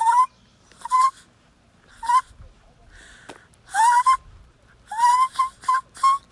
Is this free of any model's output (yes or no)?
yes